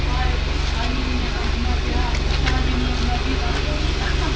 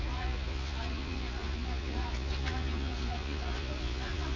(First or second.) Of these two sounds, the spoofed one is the second